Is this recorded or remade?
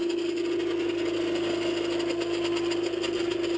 recorded